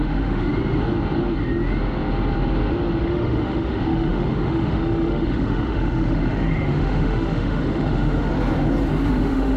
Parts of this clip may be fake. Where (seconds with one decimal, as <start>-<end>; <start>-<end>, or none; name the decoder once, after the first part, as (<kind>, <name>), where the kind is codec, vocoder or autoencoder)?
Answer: 0.0-0.5 (autoencoder, DAC-VAE); 3.0-8.3; 9.1-9.6

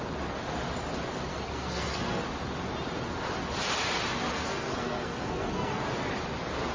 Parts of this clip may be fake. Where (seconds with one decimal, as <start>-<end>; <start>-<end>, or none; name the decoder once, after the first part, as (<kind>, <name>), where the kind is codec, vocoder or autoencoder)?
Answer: 1.3-2.2 (codec, SNAC); 4.3-5.8

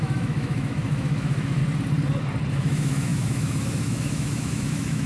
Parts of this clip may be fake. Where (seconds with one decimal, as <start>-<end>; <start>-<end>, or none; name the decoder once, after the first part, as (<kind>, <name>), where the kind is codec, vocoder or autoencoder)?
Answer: 0.0-1.6 (autoencoder, DAC-VAE); 2.5-5.1

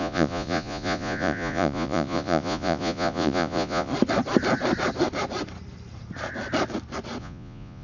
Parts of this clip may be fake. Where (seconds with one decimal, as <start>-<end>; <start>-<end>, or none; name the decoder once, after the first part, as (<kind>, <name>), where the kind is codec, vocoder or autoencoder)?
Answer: 0.0-3.9 (vocoder, Vocos); 7.2-7.8

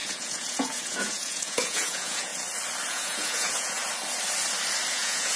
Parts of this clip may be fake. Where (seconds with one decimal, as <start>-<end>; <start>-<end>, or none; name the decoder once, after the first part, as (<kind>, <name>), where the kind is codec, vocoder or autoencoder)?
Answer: 0.0-2.3 (vocoder, Vocos); 2.9-3.8; 4.9-5.4

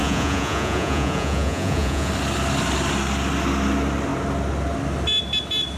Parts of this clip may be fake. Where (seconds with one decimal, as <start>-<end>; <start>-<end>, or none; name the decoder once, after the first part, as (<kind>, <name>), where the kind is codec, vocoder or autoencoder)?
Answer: 0.0-2.1 (vocoder, Vocos)